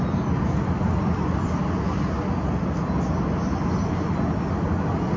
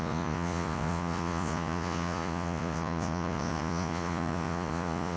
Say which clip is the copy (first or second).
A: second